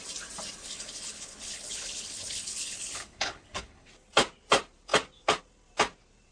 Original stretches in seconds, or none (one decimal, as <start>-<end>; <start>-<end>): 0.0-0.6; 3.9-6.3